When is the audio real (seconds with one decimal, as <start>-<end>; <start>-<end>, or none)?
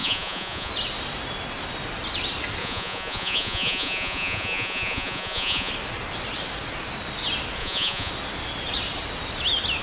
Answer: 0.7-2.6; 5.7-7.6; 8.1-9.8